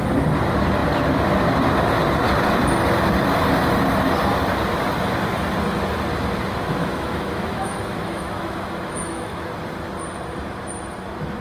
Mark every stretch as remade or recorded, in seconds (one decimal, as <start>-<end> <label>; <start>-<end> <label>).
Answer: 0.0-6.8 recorded; 6.8-9.5 remade; 9.5-11.4 recorded